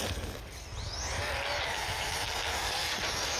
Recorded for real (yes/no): yes